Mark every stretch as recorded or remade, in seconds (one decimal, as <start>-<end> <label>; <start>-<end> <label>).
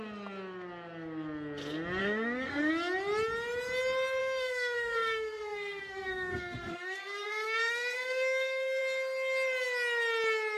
0.0-2.0 recorded; 2.0-2.7 remade; 2.7-4.2 recorded; 4.2-8.8 remade; 8.8-10.6 recorded